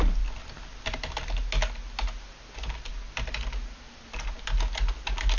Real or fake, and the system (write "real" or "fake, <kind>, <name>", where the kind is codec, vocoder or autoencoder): real